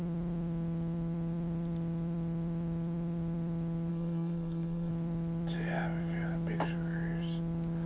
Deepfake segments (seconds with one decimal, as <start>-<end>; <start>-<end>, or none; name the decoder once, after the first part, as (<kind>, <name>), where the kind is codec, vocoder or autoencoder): 3.9-4.9 (codec, SNAC)